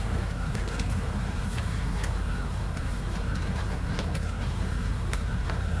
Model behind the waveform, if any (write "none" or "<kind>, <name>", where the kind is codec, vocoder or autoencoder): codec, SNAC